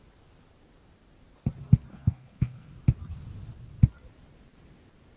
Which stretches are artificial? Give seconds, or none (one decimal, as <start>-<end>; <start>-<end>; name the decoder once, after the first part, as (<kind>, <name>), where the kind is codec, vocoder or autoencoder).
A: 1.9-2.7 (codec, SNAC)